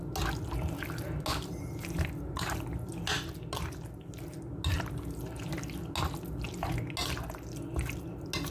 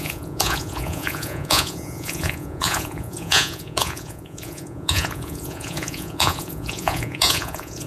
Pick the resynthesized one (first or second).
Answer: second